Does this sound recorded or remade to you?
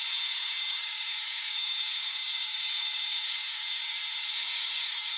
remade